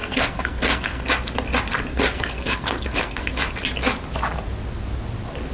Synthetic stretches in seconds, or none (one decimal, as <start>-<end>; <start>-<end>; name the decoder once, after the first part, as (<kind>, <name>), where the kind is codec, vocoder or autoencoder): 0.0-1.1 (codec, SNAC); 1.9-3.3